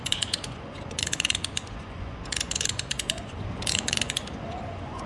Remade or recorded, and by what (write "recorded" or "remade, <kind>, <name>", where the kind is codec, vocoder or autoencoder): remade, vocoder, Vocos